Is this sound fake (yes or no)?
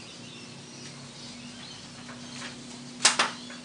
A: no